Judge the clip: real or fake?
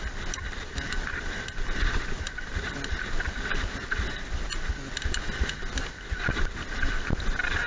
real